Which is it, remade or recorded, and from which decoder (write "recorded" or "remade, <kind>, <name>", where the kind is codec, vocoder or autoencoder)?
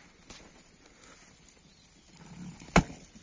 recorded